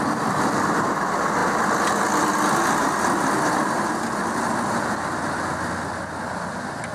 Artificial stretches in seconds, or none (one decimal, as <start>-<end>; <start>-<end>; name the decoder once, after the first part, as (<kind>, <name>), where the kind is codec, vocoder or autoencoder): none